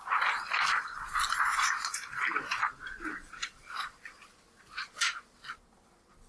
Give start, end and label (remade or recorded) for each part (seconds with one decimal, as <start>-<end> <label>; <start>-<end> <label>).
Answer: 0.0-1.5 recorded; 1.5-4.3 remade; 4.3-6.3 recorded